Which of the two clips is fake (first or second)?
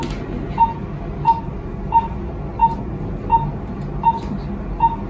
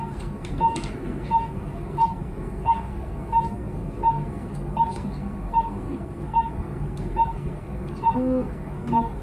second